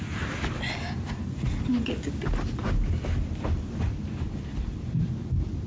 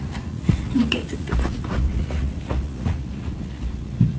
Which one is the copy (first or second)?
second